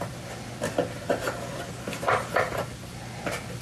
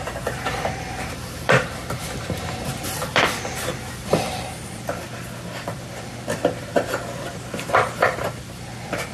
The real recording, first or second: first